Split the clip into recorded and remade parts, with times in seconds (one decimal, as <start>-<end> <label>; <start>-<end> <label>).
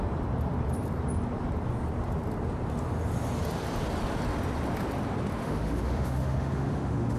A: 0.0-5.4 recorded; 5.4-7.2 remade